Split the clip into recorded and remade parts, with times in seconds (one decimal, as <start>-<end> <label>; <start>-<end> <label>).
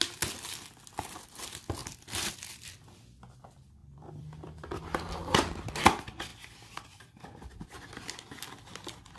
0.0-3.8 recorded; 3.8-5.7 remade; 5.7-9.2 recorded